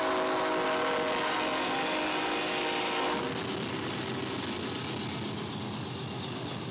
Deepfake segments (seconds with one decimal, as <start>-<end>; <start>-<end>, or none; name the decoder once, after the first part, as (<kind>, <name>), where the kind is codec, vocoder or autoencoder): none